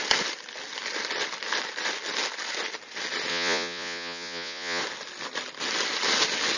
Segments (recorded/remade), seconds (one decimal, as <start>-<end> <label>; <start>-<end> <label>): 0.0-3.3 recorded; 3.3-4.8 remade; 4.8-6.6 recorded